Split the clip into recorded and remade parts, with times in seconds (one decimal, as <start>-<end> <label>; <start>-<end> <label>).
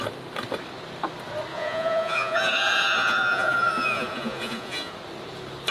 0.0-1.5 recorded; 1.5-4.9 remade; 4.9-5.7 recorded